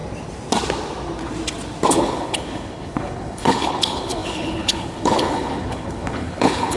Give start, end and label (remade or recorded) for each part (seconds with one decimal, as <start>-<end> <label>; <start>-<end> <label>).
0.0-1.9 recorded; 1.9-6.8 remade